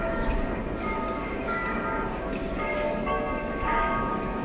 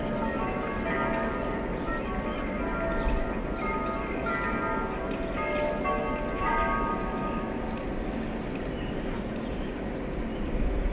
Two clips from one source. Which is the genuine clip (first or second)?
second